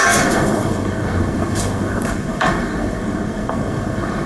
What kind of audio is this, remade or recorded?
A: remade